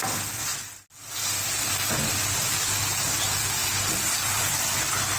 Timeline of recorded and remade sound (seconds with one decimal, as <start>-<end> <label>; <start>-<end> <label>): 0.0-0.4 remade; 0.4-1.9 recorded; 1.9-5.2 remade